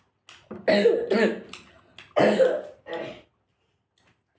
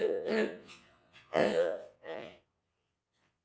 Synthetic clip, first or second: second